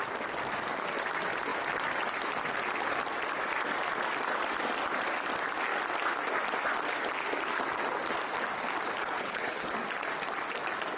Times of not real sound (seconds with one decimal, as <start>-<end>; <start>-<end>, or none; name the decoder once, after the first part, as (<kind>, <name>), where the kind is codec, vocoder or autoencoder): 9.0-9.7 (codec, HILCodec)